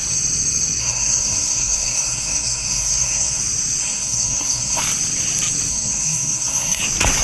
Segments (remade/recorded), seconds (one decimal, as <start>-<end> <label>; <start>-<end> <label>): 0.0-0.8 recorded; 0.8-3.4 remade; 3.4-3.8 recorded; 3.8-4.8 remade; 4.8-5.7 recorded; 5.7-6.8 remade; 6.8-7.2 recorded

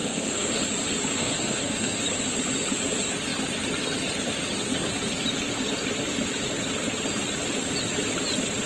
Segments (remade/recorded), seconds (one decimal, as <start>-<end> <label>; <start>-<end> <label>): 0.0-0.6 remade; 0.6-1.2 recorded; 1.2-2.0 remade; 2.0-8.7 recorded